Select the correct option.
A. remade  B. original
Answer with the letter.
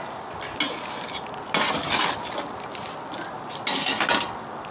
B